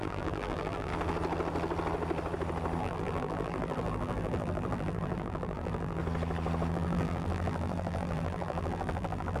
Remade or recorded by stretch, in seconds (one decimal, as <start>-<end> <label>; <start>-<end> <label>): 0.0-0.9 remade; 0.9-2.8 recorded; 2.8-6.0 remade; 6.0-6.7 recorded; 6.7-9.4 remade